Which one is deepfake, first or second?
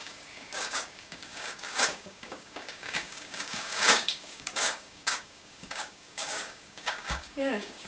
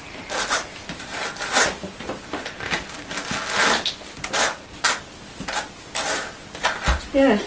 first